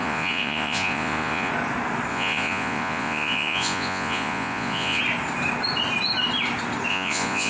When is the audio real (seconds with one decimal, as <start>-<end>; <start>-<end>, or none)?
1.5-2.1; 5.0-6.9

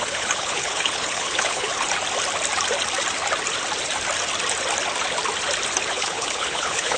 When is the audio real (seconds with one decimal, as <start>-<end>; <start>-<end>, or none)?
1.7-5.9

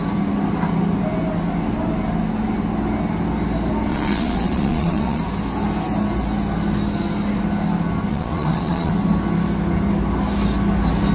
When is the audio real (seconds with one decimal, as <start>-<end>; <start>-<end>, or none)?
0.0-3.9; 5.2-8.1; 8.9-11.1